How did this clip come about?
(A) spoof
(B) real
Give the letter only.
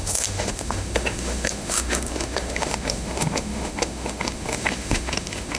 A